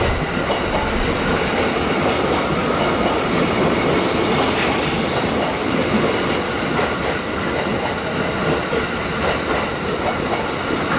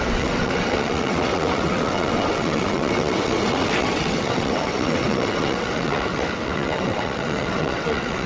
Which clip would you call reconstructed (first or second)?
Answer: second